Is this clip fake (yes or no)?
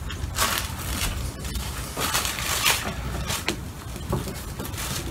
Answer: no